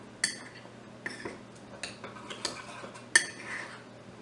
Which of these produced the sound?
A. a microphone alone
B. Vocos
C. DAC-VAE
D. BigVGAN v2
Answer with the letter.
A